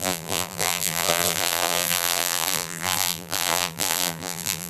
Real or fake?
fake